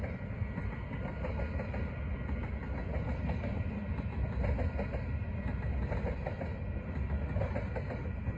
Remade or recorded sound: recorded